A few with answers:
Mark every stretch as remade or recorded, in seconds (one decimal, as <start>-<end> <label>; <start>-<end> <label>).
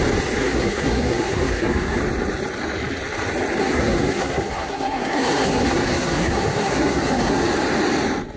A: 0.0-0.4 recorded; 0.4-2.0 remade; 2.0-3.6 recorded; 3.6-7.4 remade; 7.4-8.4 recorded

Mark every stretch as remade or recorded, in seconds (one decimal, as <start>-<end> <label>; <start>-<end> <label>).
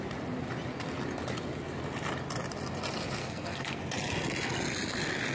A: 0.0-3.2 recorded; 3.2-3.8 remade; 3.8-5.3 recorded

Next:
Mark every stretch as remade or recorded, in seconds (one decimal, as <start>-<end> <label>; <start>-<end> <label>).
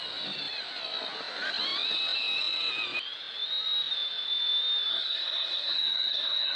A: 0.0-4.9 recorded; 4.9-6.6 remade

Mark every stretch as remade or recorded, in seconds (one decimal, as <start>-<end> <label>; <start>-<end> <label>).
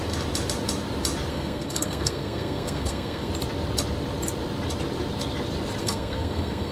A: 0.0-1.3 recorded; 1.3-3.3 remade; 3.3-5.8 recorded; 5.8-6.7 remade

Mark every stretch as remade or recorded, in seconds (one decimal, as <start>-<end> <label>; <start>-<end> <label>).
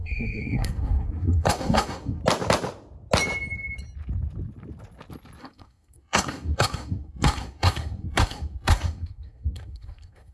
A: 0.0-2.2 remade; 2.2-5.4 recorded; 5.4-10.3 remade